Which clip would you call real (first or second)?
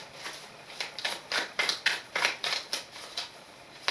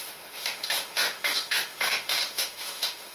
first